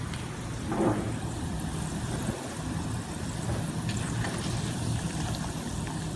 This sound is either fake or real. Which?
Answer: real